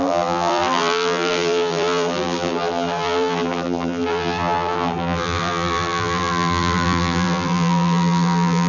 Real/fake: fake